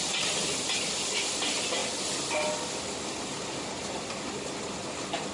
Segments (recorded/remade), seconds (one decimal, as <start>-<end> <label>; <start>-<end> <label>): 0.0-5.3 recorded